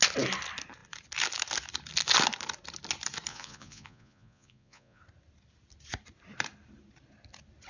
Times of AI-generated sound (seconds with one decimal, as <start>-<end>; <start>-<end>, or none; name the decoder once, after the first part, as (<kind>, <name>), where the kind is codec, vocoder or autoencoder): 3.3-5.0 (vocoder, Vocos)